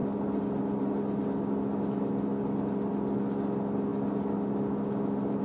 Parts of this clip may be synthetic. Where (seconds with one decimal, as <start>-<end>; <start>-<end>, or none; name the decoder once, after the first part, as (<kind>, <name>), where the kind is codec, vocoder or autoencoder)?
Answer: none